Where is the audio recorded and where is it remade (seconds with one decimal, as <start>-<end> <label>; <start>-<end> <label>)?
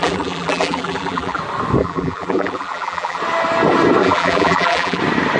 0.0-1.4 remade; 1.4-1.8 recorded; 1.8-3.2 remade; 3.2-4.0 recorded; 4.0-5.0 remade; 5.0-5.4 recorded